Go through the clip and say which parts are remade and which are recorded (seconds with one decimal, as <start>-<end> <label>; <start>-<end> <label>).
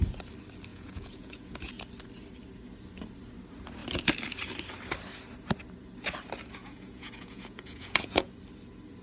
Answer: 0.0-0.7 recorded; 0.7-1.7 remade; 1.7-6.6 recorded; 6.6-8.3 remade; 8.3-9.0 recorded